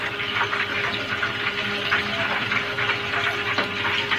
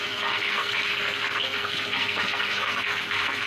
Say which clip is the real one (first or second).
first